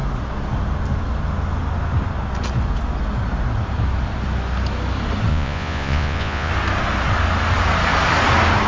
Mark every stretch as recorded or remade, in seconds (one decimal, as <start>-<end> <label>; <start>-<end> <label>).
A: 0.0-5.3 recorded; 5.3-6.5 remade; 6.5-8.7 recorded